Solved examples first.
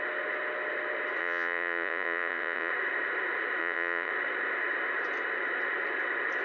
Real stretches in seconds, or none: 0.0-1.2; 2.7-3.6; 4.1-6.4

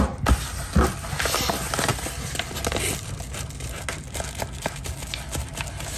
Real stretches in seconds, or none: 0.0-6.0

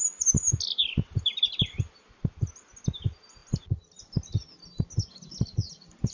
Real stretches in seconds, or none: 0.0-6.1

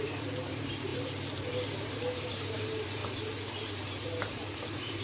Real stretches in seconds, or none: 3.0-3.6